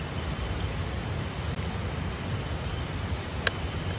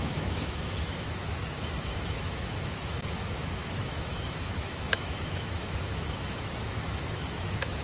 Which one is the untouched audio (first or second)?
first